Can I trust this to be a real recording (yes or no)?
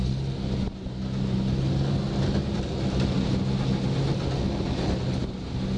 yes